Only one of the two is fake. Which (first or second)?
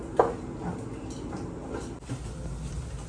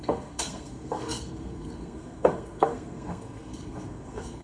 second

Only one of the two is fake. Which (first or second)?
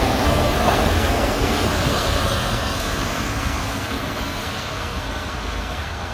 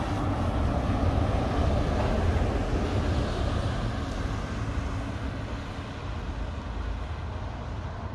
first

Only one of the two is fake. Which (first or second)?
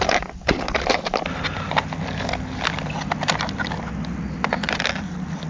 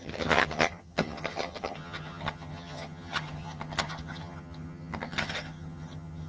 second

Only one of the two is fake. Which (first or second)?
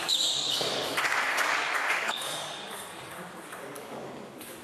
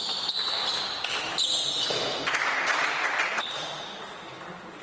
first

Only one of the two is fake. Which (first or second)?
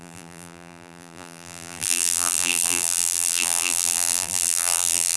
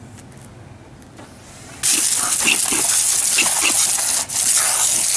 first